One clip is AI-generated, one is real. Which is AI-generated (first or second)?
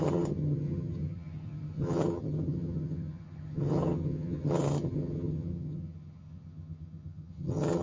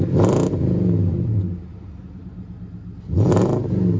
first